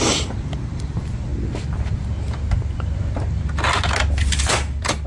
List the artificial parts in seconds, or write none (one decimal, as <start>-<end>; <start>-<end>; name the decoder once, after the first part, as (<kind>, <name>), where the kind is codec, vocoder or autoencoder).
0.0-1.3 (vocoder, BigVGAN v2); 4.4-5.1